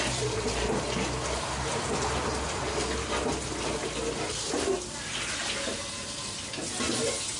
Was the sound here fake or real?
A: real